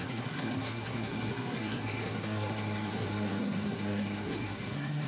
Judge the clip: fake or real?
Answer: fake